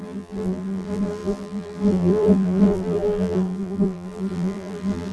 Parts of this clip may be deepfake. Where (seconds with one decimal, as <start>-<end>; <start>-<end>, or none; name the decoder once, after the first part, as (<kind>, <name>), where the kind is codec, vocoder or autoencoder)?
0.0-5.1 (vocoder, BigVGAN v2)